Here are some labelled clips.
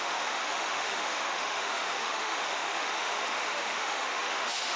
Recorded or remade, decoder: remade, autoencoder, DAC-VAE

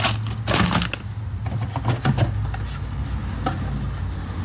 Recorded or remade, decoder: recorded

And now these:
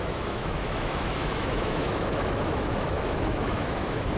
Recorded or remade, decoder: remade, autoencoder, DAC-VAE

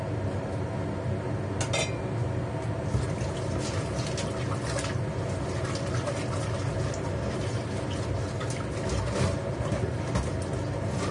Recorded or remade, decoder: recorded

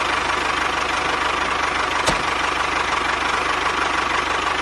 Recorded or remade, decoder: recorded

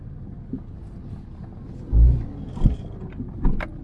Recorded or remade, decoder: recorded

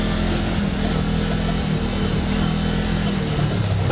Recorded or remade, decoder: recorded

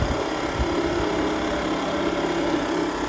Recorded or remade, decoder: recorded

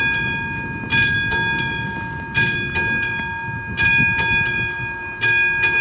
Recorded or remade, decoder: recorded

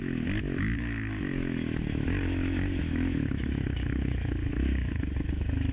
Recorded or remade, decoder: remade, autoencoder, DAC-VAE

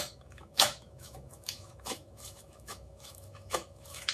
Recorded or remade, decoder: remade, autoencoder, DAC-VAE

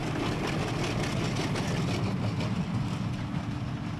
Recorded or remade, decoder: recorded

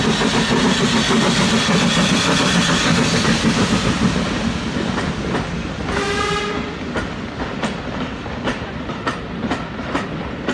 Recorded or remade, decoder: recorded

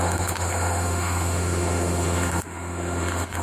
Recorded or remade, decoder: remade, autoencoder, DAC-VAE